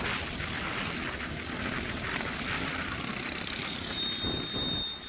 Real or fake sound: real